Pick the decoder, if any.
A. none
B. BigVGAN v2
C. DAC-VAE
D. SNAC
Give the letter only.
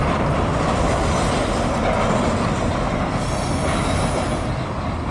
A